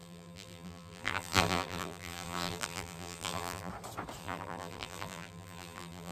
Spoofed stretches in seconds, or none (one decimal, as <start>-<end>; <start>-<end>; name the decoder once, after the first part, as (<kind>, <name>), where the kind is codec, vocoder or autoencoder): 0.0-3.7 (vocoder, BigVGAN v2); 4.2-6.1